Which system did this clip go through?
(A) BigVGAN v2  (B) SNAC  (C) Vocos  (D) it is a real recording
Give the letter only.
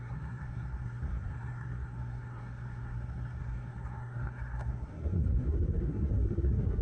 B